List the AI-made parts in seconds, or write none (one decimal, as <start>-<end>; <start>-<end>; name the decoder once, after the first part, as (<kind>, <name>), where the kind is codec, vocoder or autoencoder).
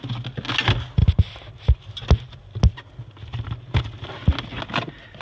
none